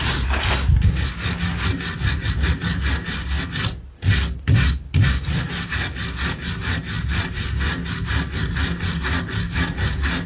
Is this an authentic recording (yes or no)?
yes